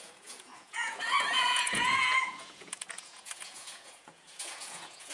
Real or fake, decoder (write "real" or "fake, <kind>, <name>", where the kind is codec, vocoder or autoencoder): fake, vocoder, Vocos